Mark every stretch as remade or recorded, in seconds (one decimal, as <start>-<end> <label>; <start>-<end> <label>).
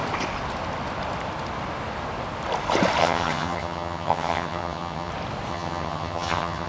0.0-3.0 recorded; 3.0-5.1 remade; 5.1-5.5 recorded; 5.5-6.7 remade